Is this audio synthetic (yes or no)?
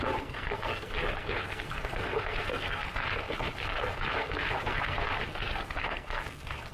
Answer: yes